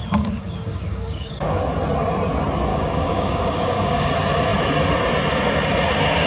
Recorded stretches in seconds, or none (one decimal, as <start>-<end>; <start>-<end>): 1.6-2.7; 4.1-6.3